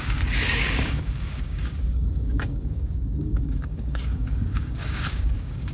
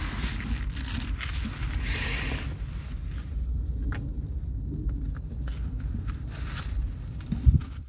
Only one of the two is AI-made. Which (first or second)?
first